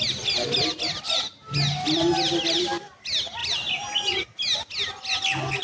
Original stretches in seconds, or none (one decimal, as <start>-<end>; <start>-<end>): 0.0-5.6

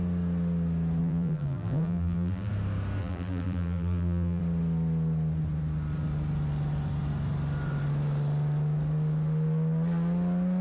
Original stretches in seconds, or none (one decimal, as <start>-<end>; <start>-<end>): 0.0-1.0; 2.5-3.0; 4.4-10.6

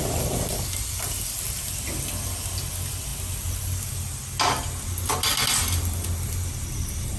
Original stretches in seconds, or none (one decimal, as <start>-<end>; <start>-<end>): 0.0-7.2